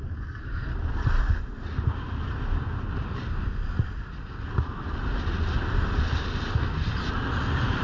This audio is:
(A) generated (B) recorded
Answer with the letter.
B